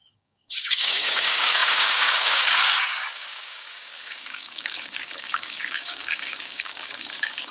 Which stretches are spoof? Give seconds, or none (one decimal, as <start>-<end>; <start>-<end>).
0.0-7.5

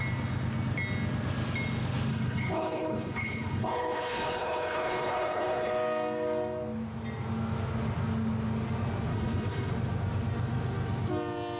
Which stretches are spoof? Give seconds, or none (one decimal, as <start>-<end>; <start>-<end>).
2.1-5.7; 9.1-9.7

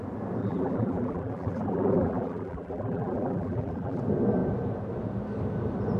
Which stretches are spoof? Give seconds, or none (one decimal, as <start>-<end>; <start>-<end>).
0.4-4.0